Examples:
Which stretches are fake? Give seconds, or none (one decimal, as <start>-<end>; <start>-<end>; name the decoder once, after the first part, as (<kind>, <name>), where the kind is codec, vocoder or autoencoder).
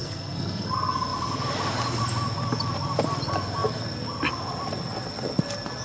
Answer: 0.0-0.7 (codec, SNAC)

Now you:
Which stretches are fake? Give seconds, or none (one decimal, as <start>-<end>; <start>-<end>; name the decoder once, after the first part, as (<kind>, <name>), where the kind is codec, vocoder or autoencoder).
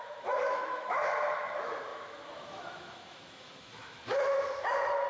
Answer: 0.0-5.1 (autoencoder, DAC-VAE)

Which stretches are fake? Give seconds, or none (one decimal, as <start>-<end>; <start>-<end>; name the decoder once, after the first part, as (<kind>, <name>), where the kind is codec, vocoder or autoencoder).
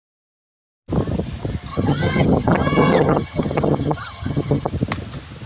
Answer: 1.7-4.7 (vocoder, HiFi-GAN)